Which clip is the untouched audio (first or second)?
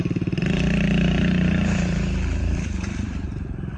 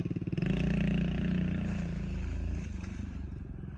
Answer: second